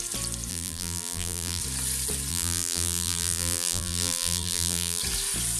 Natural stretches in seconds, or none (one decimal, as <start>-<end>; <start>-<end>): 0.0-0.5; 1.6-2.3; 5.0-5.6